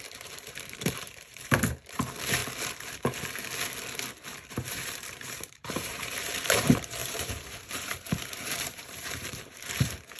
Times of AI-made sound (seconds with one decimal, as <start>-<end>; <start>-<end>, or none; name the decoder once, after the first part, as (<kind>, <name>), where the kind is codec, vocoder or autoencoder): 0.0-2.4 (vocoder, BigVGAN v2); 4.5-10.2